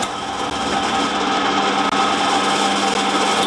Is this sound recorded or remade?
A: recorded